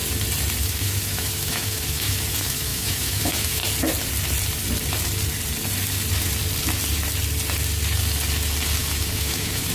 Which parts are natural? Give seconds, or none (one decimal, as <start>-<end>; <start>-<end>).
0.0-0.6; 3.6-8.8